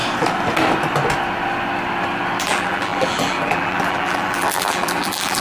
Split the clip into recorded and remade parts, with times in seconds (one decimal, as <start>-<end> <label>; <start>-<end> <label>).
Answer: 0.0-2.4 recorded; 2.4-5.4 remade